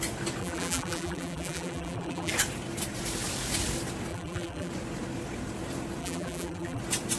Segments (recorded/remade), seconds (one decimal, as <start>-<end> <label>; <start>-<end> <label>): 0.0-0.4 recorded; 0.4-2.3 remade; 2.3-4.1 recorded; 4.1-4.7 remade; 4.7-6.0 recorded; 6.0-6.8 remade; 6.8-7.2 recorded